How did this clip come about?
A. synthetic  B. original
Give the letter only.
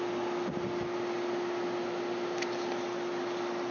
B